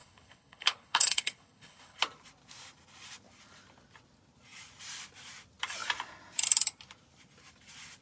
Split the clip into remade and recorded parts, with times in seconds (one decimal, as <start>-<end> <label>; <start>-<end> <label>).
0.0-2.0 remade; 2.0-8.0 recorded